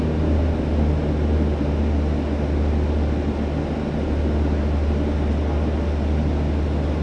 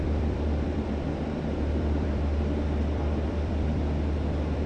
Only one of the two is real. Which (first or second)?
first